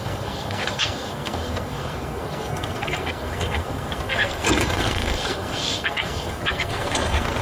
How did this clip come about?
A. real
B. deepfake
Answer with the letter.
B